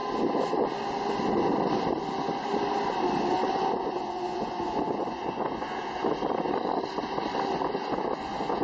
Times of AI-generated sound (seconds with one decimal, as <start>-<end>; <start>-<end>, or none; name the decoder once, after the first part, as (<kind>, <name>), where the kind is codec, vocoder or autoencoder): 3.5-6.0 (vocoder, Vocos); 7.7-8.6